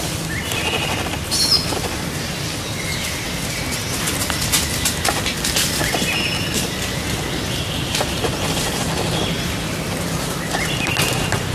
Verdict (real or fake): real